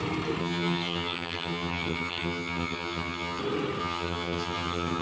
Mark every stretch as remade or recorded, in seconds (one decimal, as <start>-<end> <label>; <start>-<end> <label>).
0.0-0.4 recorded; 0.4-3.4 remade; 3.4-3.8 recorded; 3.8-5.0 remade